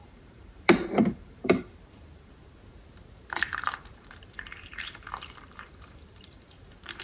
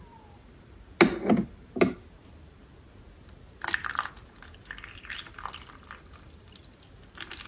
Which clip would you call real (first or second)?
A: second